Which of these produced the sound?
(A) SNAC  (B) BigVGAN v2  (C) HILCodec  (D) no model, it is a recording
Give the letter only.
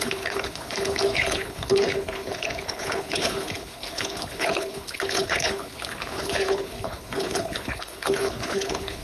C